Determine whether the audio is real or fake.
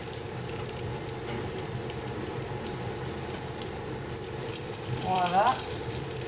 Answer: fake